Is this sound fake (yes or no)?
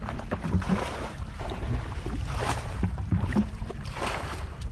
yes